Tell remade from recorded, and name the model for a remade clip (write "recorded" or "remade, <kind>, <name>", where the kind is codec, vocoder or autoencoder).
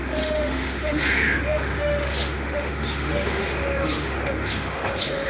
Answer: remade, autoencoder, DAC-VAE